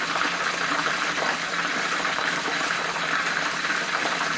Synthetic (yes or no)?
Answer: yes